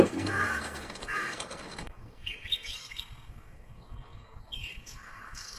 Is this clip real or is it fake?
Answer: fake